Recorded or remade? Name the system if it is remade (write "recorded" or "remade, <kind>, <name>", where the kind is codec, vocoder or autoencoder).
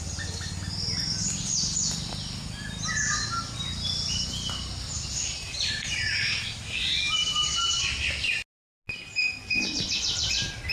recorded